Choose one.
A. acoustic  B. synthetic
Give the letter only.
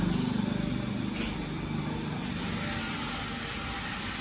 A